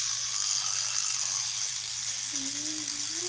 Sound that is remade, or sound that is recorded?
recorded